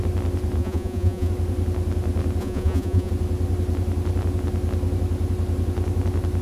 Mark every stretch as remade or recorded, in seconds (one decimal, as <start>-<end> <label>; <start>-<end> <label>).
0.0-0.6 recorded; 0.6-1.3 remade; 1.3-2.4 recorded; 2.4-3.1 remade; 3.1-6.4 recorded